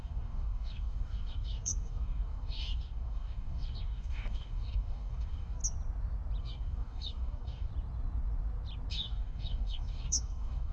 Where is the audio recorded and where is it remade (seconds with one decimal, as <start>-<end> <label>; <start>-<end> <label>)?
0.0-5.6 remade; 5.6-6.4 recorded; 6.4-7.7 remade; 7.7-8.9 recorded; 8.9-10.7 remade